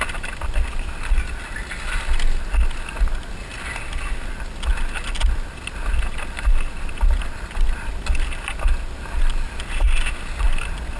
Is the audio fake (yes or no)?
no